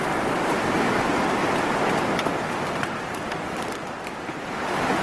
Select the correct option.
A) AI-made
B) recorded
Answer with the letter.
B